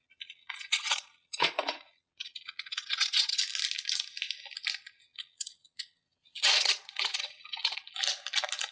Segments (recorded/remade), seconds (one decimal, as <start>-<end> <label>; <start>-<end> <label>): 0.0-3.4 remade; 3.4-5.1 recorded; 5.1-7.9 remade; 7.9-8.7 recorded